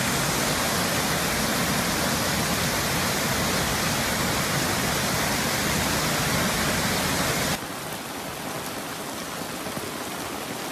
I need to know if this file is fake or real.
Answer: real